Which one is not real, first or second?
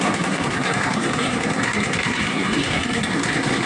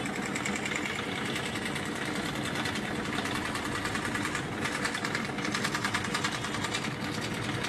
first